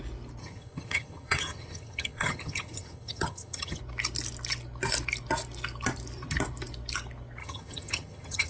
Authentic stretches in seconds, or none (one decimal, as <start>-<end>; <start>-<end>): 0.0-0.4; 3.8-7.4